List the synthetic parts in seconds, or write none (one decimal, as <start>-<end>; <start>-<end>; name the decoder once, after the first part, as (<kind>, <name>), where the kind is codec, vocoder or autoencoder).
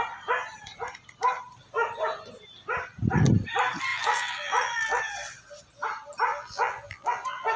3.9-5.0 (vocoder, BigVGAN v2); 6.3-7.6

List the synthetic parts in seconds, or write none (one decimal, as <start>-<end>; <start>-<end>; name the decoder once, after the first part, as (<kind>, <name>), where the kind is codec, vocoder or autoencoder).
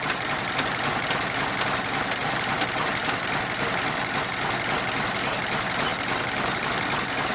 2.2-3.4 (vocoder, BigVGAN v2); 5.9-6.6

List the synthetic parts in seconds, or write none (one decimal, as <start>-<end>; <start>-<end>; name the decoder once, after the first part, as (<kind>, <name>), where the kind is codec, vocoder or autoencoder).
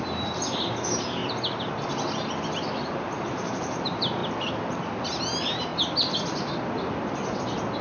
0.0-1.2 (vocoder, BigVGAN v2); 2.8-4.2; 5.2-5.7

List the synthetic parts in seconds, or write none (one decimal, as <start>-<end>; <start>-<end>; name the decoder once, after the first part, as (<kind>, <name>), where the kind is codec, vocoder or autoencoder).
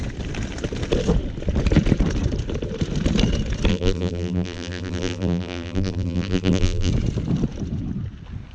3.7-6.9 (vocoder, BigVGAN v2)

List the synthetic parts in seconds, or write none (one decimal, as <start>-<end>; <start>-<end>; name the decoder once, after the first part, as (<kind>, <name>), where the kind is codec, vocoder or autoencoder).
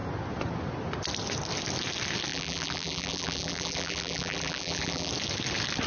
2.3-5.1 (vocoder, BigVGAN v2)